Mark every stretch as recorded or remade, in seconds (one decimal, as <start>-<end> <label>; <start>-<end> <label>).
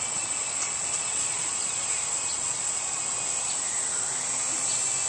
0.0-3.0 remade; 3.0-5.1 recorded